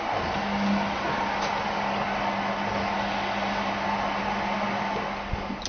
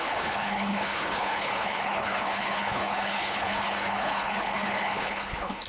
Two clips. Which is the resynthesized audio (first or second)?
second